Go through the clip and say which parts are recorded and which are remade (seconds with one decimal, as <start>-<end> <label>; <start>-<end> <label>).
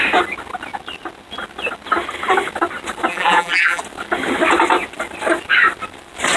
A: 0.0-3.1 recorded; 3.1-3.8 remade; 3.8-6.4 recorded